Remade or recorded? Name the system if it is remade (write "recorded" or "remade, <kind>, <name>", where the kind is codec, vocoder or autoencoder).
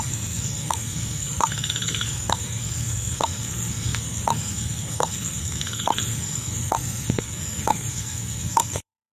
remade, codec, SNAC